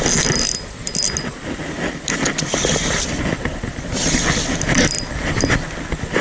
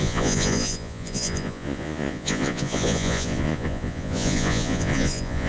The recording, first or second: first